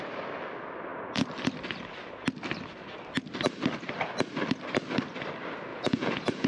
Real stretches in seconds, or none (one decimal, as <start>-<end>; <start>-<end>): 0.0-5.7